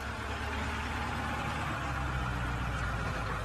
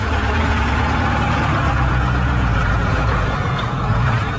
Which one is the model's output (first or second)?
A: second